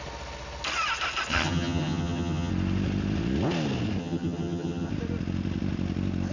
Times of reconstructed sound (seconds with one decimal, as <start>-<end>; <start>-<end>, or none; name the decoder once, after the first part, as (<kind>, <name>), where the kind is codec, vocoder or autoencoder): 1.3-2.5 (vocoder, HiFi-GAN); 4.0-4.9